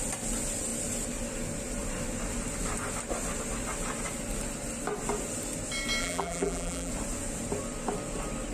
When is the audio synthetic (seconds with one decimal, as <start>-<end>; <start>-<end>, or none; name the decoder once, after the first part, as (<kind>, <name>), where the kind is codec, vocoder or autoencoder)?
6.0-6.9 (vocoder, BigVGAN v2)